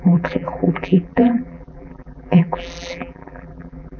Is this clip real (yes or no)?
no